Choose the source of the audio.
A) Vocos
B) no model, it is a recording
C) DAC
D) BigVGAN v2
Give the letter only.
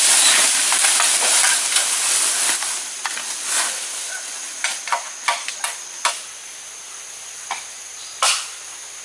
B